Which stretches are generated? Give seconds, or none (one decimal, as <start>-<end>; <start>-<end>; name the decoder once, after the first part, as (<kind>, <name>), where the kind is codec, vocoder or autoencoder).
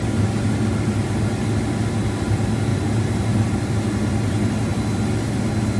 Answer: 2.7-3.6 (vocoder, BigVGAN v2)